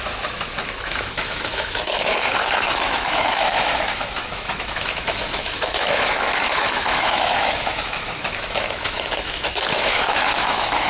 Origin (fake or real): fake